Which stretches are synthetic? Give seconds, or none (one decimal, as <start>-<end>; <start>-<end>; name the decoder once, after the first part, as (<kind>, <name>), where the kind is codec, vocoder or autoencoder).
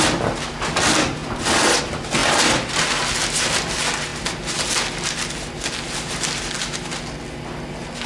none